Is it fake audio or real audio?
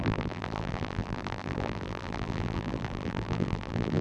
fake